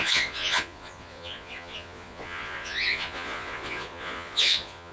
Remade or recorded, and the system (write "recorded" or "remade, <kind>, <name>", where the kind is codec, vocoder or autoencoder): remade, vocoder, Vocos